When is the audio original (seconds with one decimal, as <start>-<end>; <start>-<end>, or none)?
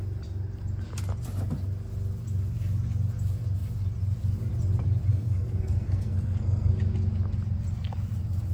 0.0-5.1; 6.7-8.5